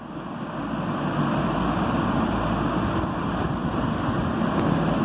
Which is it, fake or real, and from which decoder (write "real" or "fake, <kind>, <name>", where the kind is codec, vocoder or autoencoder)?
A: real